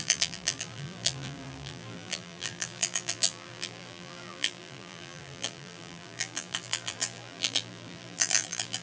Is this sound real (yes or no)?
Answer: no